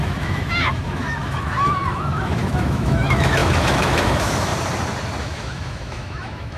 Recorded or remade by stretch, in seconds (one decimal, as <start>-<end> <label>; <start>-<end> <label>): 0.0-4.5 remade; 4.5-5.2 recorded; 5.2-6.6 remade